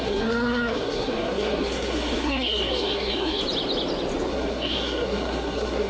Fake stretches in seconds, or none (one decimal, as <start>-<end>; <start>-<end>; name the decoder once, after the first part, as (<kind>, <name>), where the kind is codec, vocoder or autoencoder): 0.0-3.4 (codec, SNAC); 4.3-5.9